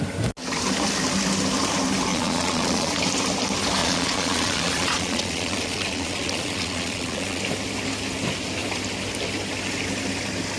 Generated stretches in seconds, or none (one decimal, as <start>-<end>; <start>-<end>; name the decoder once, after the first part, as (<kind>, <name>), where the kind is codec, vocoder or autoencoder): 2.1-3.0 (vocoder, Vocos); 3.8-7.4